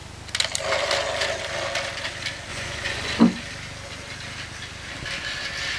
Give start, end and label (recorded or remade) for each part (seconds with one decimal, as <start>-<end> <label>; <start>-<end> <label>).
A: 0.0-2.5 recorded; 2.5-3.2 remade; 3.2-5.8 recorded